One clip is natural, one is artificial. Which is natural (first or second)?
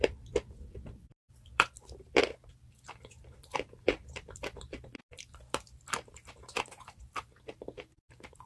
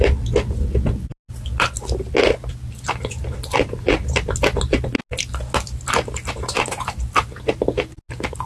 second